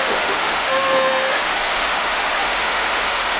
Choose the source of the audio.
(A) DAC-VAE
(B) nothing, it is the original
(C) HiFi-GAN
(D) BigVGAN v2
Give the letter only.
A